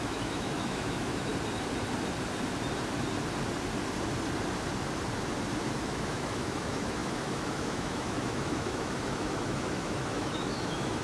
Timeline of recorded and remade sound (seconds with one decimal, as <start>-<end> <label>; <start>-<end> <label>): 0.0-1.3 remade; 1.3-5.8 recorded; 5.8-11.0 remade